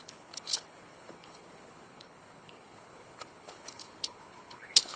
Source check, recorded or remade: remade